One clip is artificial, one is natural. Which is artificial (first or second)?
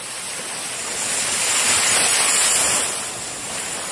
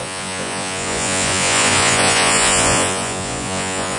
second